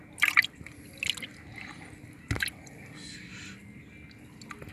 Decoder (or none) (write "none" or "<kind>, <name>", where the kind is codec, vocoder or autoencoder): none